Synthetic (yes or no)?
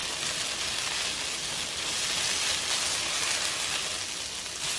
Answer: no